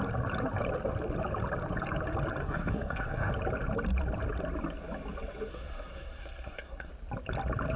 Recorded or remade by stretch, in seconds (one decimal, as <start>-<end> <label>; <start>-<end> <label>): 0.0-2.4 recorded; 2.4-3.3 remade; 3.3-5.5 recorded; 5.5-6.9 remade; 6.9-7.8 recorded